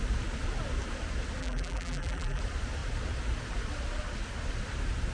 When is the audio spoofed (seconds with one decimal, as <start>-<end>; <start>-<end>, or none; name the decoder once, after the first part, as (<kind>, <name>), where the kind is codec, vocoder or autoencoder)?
1.4-2.4 (vocoder, BigVGAN v2)